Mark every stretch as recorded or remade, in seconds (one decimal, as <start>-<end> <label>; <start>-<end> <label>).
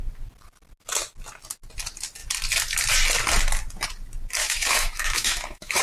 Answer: 0.0-4.4 recorded; 4.4-5.8 remade